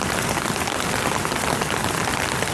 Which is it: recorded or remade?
recorded